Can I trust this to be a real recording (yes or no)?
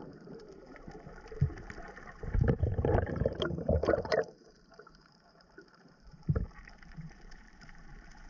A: no